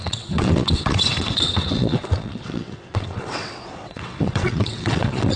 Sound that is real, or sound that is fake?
fake